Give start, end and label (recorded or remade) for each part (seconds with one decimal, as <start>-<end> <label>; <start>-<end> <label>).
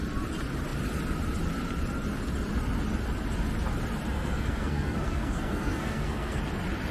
0.0-4.1 recorded; 4.1-6.4 remade; 6.4-6.9 recorded